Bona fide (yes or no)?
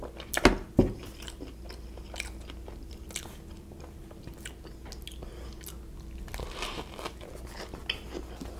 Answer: yes